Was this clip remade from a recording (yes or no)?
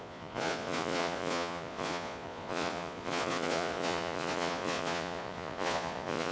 yes